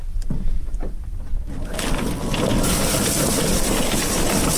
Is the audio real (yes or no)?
yes